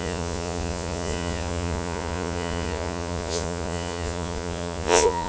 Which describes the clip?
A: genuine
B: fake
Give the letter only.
B